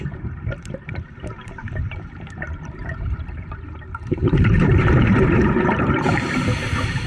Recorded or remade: remade